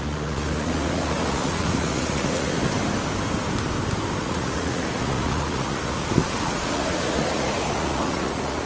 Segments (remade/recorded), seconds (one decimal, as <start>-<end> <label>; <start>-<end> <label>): 0.0-2.7 remade; 2.7-4.2 recorded; 4.2-8.7 remade

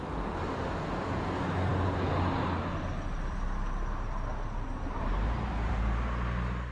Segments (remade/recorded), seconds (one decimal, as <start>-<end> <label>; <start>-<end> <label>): 0.0-6.7 recorded

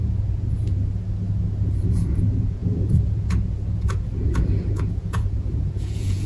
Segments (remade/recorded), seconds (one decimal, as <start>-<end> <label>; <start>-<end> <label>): 0.0-0.8 remade; 0.8-1.8 recorded; 1.8-6.3 remade

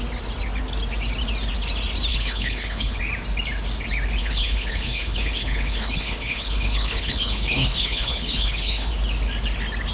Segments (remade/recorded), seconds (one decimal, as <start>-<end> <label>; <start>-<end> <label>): 0.0-2.1 recorded; 2.1-3.0 remade; 3.0-4.2 recorded; 4.2-8.9 remade; 8.9-9.9 recorded

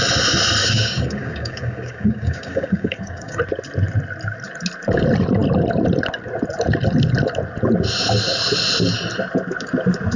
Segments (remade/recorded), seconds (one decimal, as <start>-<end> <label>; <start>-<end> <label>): 0.0-0.6 recorded; 0.6-3.4 remade; 3.4-10.2 recorded

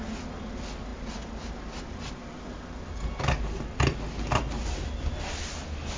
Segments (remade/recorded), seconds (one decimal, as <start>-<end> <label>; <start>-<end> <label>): 0.0-6.0 recorded

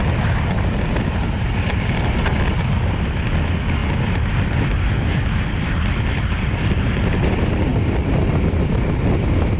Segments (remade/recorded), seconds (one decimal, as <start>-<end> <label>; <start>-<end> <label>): 0.0-9.6 recorded